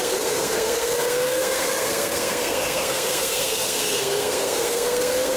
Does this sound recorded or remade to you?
remade